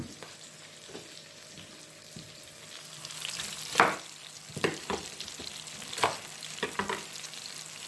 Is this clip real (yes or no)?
yes